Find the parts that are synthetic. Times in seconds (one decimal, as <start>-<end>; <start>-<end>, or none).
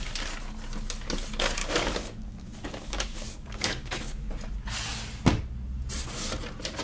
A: 1.6-4.3